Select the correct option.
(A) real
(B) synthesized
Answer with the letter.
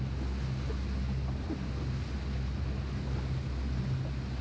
A